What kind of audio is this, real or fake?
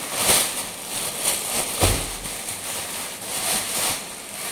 real